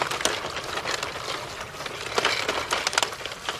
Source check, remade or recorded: recorded